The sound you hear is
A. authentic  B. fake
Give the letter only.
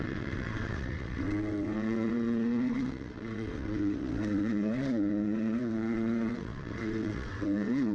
B